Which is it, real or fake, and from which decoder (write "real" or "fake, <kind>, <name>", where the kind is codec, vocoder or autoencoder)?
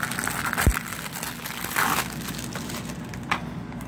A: real